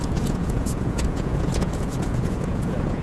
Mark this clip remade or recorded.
remade